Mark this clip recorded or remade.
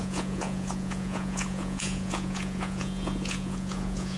remade